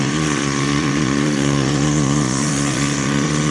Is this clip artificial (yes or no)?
yes